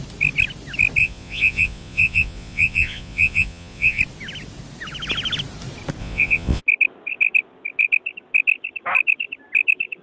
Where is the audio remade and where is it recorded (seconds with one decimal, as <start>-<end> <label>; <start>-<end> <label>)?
0.0-1.0 recorded; 1.0-4.0 remade; 4.0-6.0 recorded; 6.0-6.6 remade; 6.6-10.0 recorded